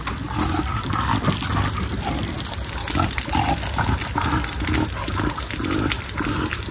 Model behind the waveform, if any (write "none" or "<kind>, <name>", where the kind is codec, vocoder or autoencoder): none